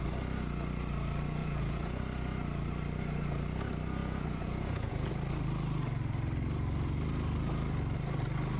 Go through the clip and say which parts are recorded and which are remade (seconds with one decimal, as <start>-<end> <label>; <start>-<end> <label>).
0.0-1.4 recorded; 1.4-2.0 remade; 2.0-4.0 recorded; 4.0-5.1 remade; 5.1-8.6 recorded